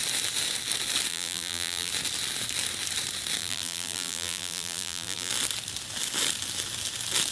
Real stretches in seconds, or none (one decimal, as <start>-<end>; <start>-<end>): 0.0-1.1; 1.9-3.4; 5.3-7.3